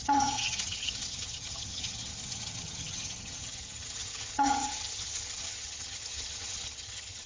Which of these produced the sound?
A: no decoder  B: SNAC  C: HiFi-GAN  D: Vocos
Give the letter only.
C